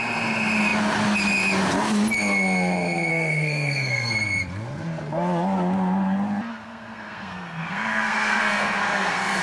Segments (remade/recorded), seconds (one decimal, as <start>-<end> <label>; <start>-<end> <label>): 0.0-3.1 recorded; 3.1-4.1 remade; 4.1-6.5 recorded; 6.5-9.4 remade